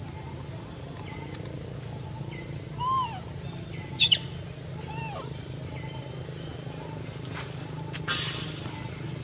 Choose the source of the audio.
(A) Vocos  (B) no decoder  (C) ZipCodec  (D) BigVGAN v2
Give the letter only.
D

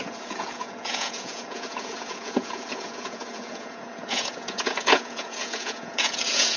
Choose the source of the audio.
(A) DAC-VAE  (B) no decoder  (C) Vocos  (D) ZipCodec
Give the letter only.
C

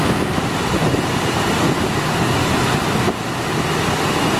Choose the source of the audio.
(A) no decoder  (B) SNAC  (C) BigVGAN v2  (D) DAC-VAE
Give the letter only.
A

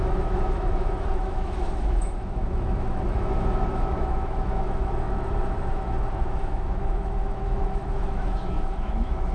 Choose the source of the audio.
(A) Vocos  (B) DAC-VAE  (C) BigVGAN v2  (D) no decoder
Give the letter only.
B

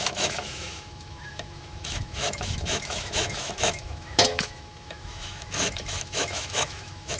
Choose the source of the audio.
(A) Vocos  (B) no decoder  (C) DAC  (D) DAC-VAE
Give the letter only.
D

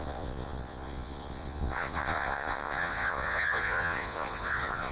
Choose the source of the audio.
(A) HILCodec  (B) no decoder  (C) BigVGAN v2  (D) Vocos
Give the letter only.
D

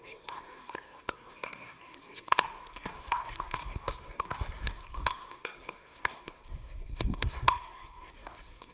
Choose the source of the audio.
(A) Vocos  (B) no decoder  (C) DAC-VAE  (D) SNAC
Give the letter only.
D